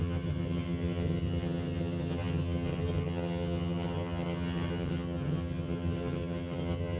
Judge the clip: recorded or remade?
remade